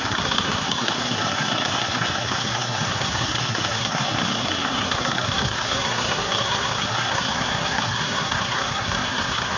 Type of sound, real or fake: fake